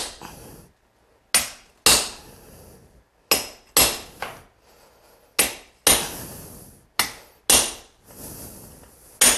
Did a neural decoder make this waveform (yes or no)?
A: no